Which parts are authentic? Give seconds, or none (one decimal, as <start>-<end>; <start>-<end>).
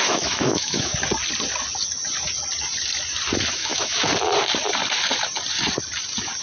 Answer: 0.9-3.5; 4.1-6.4